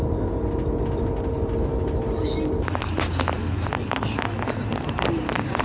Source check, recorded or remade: recorded